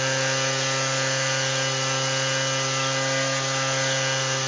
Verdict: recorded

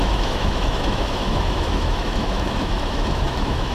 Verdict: remade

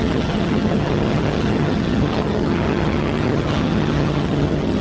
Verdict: remade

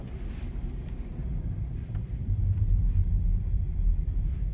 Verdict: remade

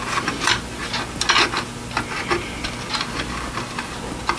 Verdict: recorded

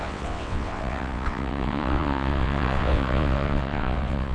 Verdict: remade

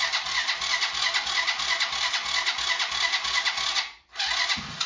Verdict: recorded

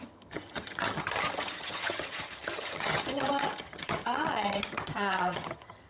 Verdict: remade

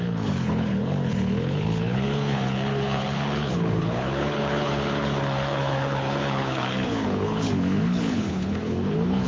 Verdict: remade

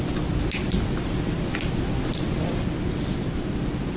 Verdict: recorded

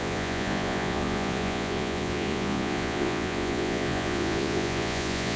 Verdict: remade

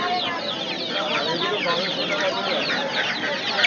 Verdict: recorded